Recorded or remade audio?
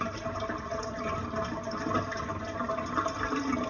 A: recorded